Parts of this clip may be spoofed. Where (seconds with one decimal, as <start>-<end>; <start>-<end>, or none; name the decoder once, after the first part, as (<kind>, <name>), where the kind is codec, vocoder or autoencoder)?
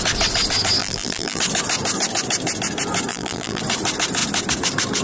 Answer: 0.8-1.4 (vocoder, BigVGAN v2); 3.1-3.6